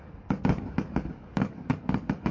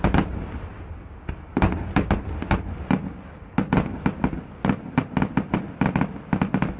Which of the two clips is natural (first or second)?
second